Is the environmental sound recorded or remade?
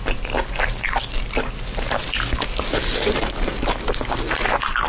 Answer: recorded